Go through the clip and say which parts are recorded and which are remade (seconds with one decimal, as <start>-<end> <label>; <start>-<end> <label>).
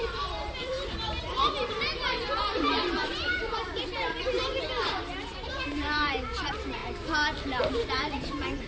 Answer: 0.0-1.4 remade; 1.4-2.4 recorded; 2.4-6.8 remade; 6.8-7.7 recorded; 7.7-8.7 remade